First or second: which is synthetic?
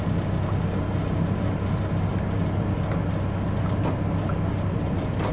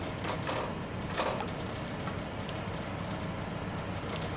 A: second